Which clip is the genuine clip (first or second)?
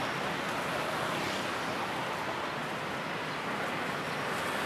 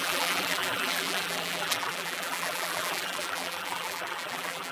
first